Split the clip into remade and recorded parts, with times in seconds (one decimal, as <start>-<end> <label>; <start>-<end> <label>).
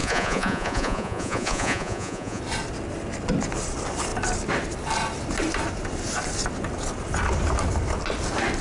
0.0-2.4 remade; 2.4-8.6 recorded